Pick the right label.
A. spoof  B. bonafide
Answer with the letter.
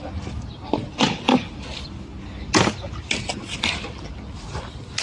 B